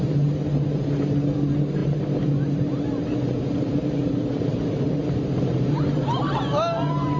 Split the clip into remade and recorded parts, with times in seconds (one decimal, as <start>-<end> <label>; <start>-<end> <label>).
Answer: 0.0-7.2 remade

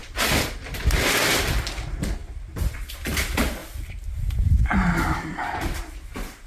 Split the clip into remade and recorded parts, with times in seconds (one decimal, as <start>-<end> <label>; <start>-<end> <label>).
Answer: 0.0-1.6 remade; 1.6-2.2 recorded; 2.2-2.9 remade; 2.9-3.6 recorded; 3.6-5.8 remade; 5.8-6.5 recorded

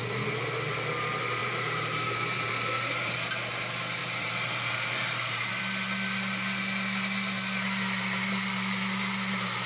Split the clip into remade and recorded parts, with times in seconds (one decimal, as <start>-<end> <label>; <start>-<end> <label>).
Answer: 0.0-1.4 recorded; 1.4-3.1 remade; 3.1-4.0 recorded; 4.0-5.6 remade; 5.6-9.7 recorded

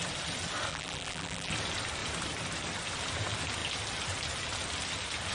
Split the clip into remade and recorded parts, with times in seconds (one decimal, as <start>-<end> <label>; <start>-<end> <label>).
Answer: 0.0-0.7 recorded; 0.7-1.5 remade; 1.5-5.3 recorded

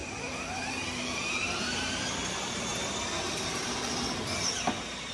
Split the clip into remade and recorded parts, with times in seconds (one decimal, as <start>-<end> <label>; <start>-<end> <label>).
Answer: 0.0-1.6 remade; 1.6-5.1 recorded

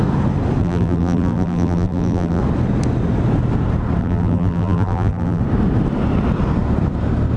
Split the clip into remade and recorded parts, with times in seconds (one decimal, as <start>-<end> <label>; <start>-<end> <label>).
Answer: 0.0-0.6 recorded; 0.6-2.4 remade; 2.4-4.0 recorded; 4.0-5.4 remade; 5.4-7.4 recorded

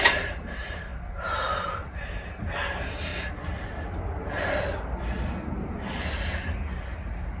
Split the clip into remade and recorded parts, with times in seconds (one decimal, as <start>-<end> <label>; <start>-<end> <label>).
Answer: 0.0-0.9 remade; 0.9-1.6 recorded; 1.6-3.1 remade; 3.1-5.6 recorded; 5.6-7.4 remade

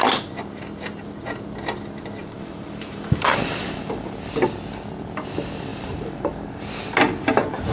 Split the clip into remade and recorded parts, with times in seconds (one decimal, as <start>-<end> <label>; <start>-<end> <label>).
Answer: 0.0-2.2 recorded; 2.2-4.2 remade; 4.2-5.7 recorded; 5.7-6.6 remade; 6.6-7.7 recorded